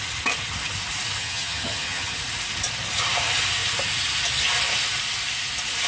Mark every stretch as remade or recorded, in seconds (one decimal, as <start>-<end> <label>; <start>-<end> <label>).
0.0-1.2 recorded; 1.2-2.2 remade; 2.2-5.9 recorded